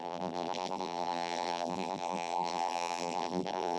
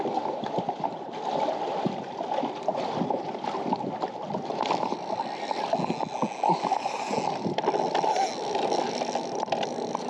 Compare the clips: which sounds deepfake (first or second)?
first